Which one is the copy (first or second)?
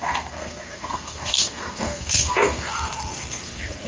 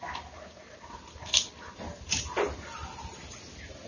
first